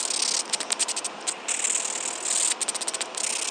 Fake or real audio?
real